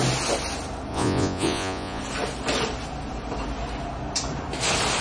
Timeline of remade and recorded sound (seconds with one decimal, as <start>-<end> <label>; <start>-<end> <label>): 0.0-0.9 recorded; 0.9-2.0 remade; 2.0-5.0 recorded

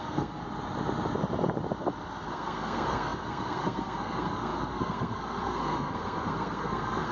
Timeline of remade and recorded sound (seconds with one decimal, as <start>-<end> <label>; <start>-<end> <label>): 0.0-0.4 remade; 0.4-2.3 recorded; 2.3-7.1 remade

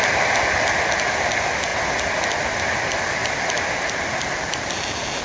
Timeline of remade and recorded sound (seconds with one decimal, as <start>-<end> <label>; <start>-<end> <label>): 0.0-5.2 recorded

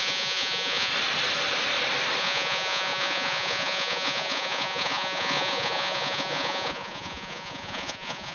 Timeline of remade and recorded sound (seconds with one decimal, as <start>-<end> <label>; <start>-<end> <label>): 0.0-0.9 remade; 0.9-2.2 recorded; 2.2-8.3 remade